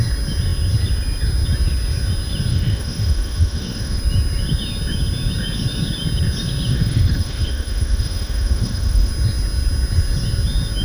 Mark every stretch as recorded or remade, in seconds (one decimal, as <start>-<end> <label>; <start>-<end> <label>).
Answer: 0.0-2.5 recorded; 2.5-4.0 remade; 4.0-6.7 recorded; 6.7-9.1 remade; 9.1-10.8 recorded